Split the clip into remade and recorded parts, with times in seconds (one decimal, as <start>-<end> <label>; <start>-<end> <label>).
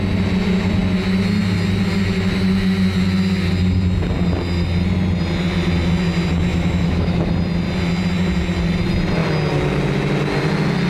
0.0-6.5 recorded; 6.5-7.3 remade; 7.3-10.9 recorded